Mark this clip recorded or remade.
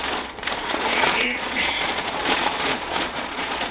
remade